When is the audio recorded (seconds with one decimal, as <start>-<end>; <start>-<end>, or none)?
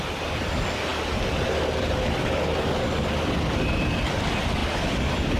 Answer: 0.0-4.6